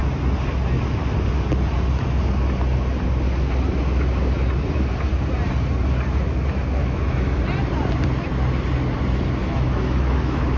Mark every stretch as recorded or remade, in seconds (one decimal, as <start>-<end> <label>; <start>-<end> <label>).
0.0-6.8 recorded; 6.8-7.4 remade; 7.4-9.4 recorded; 9.4-10.6 remade